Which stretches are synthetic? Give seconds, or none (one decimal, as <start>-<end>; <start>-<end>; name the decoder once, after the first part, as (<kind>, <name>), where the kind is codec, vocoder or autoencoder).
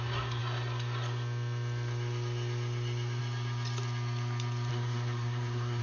4.7-5.8 (codec, SNAC)